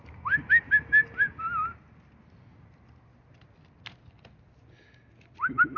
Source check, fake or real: real